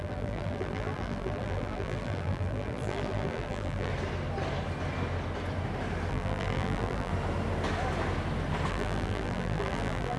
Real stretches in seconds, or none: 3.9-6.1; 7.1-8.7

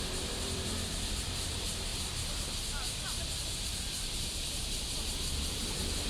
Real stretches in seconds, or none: 1.9-3.0